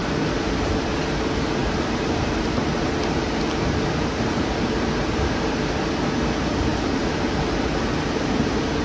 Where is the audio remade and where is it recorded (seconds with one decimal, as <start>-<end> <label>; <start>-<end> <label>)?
0.0-1.6 recorded; 1.6-5.6 remade; 5.6-6.7 recorded; 6.7-8.8 remade